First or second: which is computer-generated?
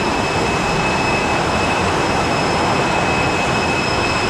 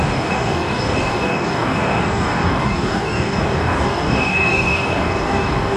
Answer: second